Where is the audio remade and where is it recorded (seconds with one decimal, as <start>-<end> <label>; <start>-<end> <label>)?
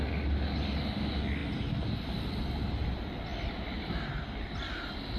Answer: 0.0-5.2 recorded